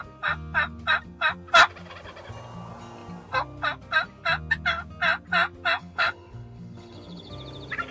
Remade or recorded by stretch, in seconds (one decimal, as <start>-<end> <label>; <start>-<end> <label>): 0.0-5.8 recorded; 5.8-7.3 remade; 7.3-7.9 recorded